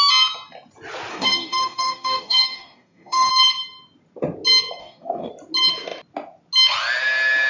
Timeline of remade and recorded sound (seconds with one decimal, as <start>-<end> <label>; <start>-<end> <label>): 0.0-1.1 recorded; 1.1-3.3 remade; 3.3-4.8 recorded; 4.8-5.3 remade; 5.3-7.5 recorded